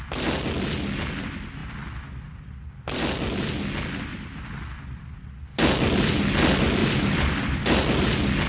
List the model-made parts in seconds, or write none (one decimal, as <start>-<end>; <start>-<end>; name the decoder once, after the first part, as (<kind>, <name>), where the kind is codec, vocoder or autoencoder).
4.1-5.2 (vocoder, BigVGAN v2); 6.8-8.0